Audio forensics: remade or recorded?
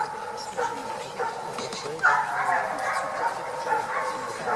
recorded